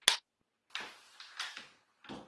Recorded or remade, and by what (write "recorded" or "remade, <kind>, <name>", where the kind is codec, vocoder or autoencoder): recorded